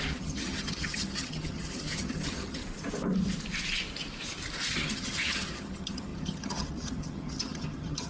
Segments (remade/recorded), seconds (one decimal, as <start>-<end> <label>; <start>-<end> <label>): 0.0-2.6 remade; 2.6-4.7 recorded; 4.7-8.1 remade